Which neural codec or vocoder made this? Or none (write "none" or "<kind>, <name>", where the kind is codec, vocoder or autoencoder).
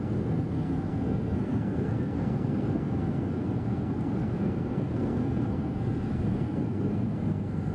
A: codec, SNAC